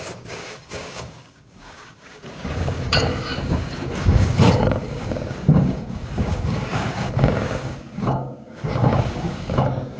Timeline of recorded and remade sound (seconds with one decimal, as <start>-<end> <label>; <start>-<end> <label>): 0.0-10.0 remade